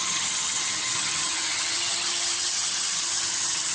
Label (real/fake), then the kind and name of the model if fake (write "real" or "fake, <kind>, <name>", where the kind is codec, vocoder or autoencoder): fake, vocoder, HiFi-GAN